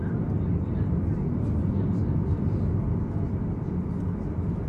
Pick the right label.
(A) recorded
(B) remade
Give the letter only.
A